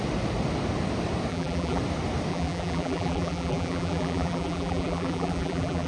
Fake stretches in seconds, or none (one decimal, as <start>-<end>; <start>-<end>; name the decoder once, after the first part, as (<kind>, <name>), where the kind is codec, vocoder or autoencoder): 1.3-1.8 (vocoder, BigVGAN v2); 2.3-5.9